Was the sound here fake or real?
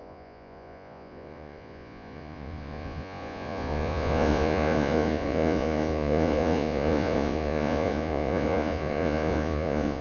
fake